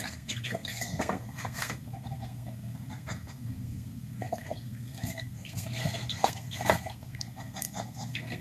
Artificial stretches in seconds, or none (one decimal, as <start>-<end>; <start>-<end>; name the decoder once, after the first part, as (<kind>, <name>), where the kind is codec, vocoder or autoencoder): 0.0-8.4 (codec, SNAC)